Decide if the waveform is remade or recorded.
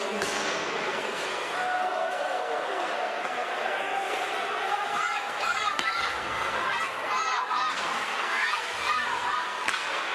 remade